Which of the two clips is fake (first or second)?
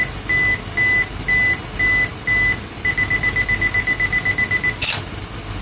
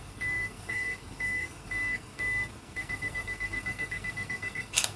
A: second